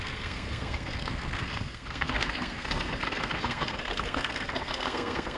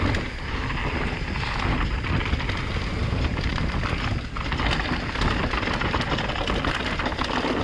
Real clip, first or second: second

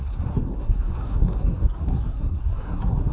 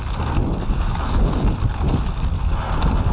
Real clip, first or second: second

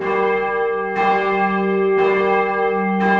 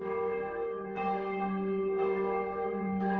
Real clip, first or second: first